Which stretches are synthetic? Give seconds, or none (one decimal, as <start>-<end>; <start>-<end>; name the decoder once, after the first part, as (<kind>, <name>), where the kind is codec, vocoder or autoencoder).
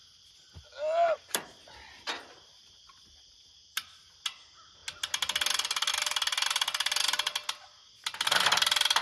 none